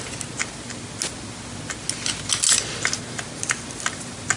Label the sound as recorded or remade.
recorded